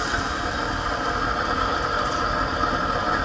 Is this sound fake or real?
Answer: real